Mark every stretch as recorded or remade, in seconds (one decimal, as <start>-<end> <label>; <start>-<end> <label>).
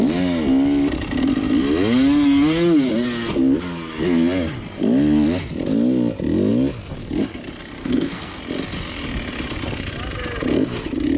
0.0-7.8 recorded; 7.8-8.4 remade; 8.4-11.2 recorded